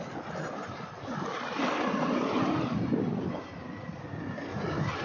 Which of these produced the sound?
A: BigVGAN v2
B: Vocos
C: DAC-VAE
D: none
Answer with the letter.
D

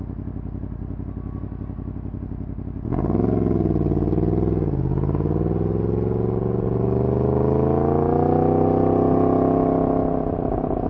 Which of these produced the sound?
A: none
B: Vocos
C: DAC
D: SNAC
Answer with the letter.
A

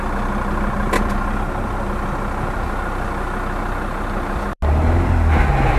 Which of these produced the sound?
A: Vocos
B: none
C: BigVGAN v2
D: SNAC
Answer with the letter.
B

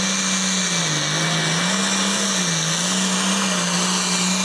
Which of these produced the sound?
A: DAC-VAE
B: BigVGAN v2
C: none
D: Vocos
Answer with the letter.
C